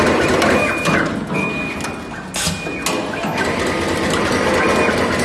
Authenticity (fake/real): real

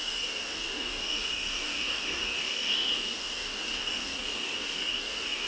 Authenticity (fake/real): fake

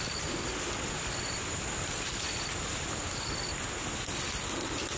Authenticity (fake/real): real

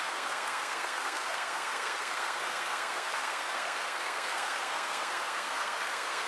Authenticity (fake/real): fake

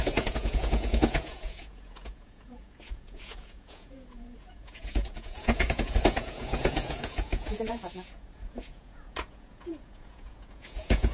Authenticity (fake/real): fake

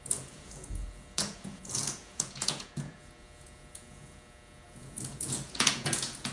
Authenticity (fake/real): fake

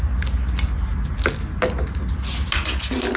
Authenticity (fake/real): real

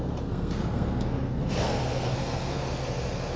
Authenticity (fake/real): fake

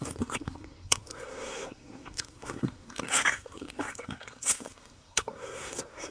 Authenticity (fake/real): fake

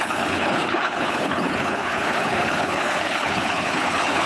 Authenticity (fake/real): fake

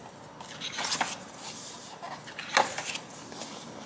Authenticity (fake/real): real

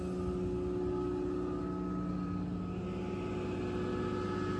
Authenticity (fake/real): real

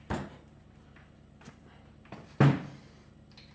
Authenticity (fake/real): real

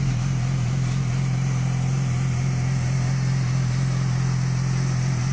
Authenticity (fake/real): real